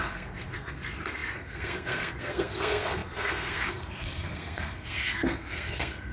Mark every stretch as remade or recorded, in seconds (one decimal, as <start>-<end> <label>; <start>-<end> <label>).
0.0-6.1 remade